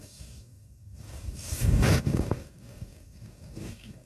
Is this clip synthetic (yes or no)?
yes